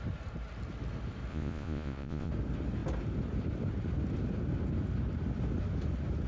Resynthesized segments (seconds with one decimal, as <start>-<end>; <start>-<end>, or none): 1.3-2.3